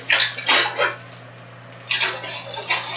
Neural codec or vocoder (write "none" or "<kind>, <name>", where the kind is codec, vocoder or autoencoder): none